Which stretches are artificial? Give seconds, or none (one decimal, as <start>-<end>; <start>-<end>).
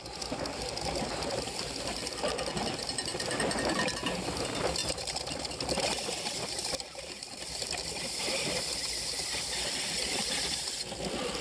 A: 3.1-3.7; 4.8-5.4